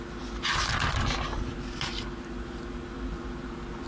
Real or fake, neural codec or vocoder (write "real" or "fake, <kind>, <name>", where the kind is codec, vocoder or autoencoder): real